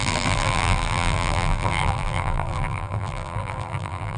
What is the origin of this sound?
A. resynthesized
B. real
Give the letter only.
A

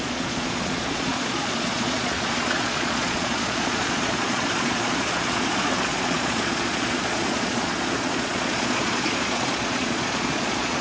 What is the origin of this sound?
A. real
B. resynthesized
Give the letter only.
B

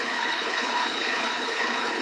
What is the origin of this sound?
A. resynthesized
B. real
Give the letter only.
A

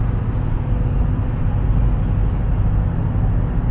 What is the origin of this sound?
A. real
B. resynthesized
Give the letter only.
A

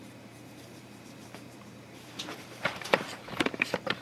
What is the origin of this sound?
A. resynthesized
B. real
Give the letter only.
A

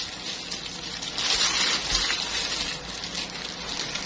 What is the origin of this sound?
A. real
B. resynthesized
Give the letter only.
A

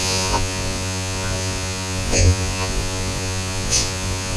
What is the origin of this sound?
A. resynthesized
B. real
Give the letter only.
A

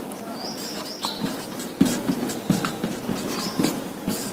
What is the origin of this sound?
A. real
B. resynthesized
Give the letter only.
A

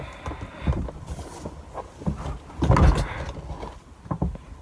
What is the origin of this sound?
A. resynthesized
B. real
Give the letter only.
B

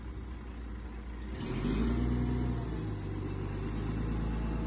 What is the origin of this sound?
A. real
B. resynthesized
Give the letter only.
A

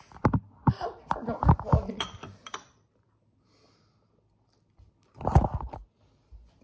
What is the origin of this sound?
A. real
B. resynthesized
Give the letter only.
A